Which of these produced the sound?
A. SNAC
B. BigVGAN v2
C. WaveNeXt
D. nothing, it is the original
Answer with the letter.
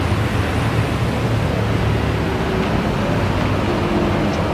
D